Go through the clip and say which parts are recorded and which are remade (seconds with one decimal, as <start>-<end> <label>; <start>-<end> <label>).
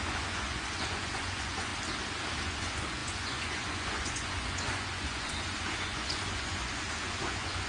0.0-1.7 remade; 1.7-2.4 recorded; 2.4-7.7 remade